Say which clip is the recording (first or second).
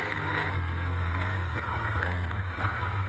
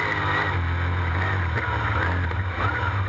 second